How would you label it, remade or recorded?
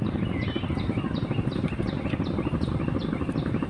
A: remade